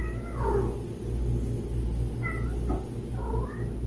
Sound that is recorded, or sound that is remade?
recorded